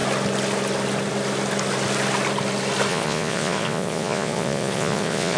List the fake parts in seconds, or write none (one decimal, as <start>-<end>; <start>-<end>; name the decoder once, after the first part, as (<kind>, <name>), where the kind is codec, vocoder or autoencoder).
2.9-5.4 (vocoder, Vocos)